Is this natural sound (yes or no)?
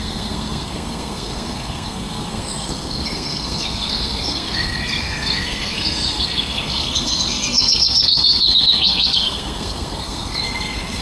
no